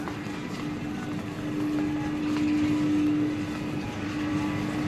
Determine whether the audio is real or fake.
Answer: real